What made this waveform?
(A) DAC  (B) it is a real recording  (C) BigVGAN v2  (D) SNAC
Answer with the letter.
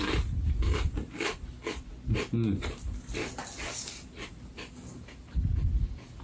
B